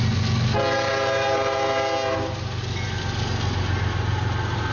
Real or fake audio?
real